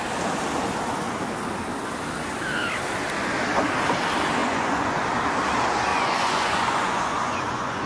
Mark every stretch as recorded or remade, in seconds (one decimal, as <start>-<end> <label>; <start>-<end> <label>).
0.0-4.4 recorded; 4.4-5.0 remade; 5.0-5.9 recorded; 5.9-7.9 remade